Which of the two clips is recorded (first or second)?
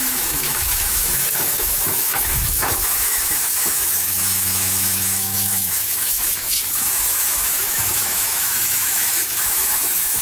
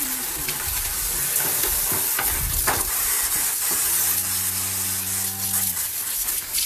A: second